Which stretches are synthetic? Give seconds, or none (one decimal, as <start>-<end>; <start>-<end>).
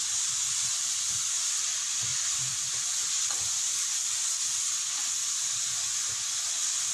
none